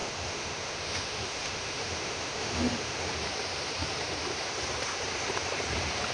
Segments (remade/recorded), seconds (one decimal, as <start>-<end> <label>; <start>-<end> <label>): 0.0-3.1 remade; 3.1-6.1 recorded